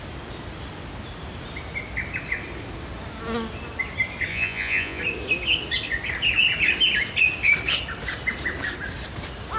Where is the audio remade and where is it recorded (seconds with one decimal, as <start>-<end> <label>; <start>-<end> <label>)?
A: 0.0-4.3 recorded; 4.3-5.0 remade; 5.0-9.6 recorded